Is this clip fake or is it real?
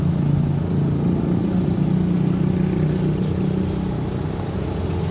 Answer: real